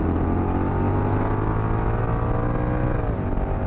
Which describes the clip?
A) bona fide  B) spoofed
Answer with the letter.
A